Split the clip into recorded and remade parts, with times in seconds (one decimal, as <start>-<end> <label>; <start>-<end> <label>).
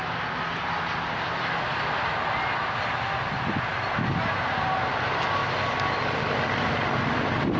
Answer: 0.0-7.6 recorded